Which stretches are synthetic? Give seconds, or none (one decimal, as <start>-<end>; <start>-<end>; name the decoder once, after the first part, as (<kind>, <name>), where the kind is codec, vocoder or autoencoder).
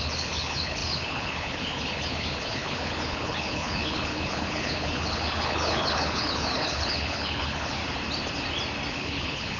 0.0-7.8 (codec, HILCodec); 8.9-9.6